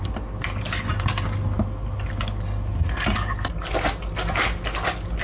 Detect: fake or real real